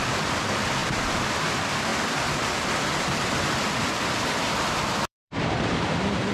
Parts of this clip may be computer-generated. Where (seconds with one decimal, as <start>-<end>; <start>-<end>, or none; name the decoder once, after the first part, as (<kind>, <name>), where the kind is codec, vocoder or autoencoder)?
0.0-1.9 (vocoder, BigVGAN v2); 4.7-6.3